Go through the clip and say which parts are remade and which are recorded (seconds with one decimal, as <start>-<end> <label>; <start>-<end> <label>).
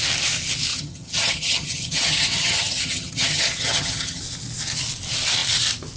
0.0-0.7 recorded; 0.7-4.2 remade; 4.2-6.0 recorded